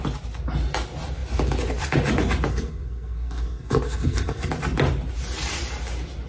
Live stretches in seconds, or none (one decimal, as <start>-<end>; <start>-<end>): 0.0-2.5; 4.5-6.3